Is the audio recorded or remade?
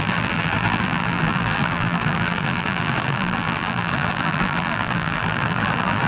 remade